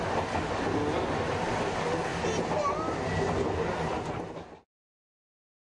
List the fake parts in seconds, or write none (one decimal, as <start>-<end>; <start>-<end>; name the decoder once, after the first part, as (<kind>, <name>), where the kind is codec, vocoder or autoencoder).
none